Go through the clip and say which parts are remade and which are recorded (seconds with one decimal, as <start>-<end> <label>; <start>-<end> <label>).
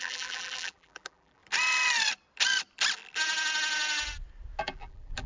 0.0-1.4 remade; 1.4-4.6 recorded; 4.6-5.3 remade